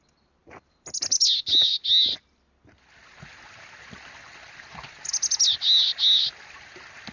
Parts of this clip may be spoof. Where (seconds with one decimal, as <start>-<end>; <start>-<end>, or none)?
none